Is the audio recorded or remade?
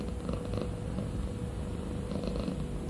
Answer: recorded